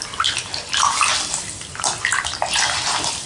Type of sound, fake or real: real